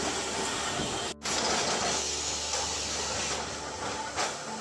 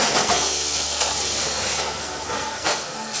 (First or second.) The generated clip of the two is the second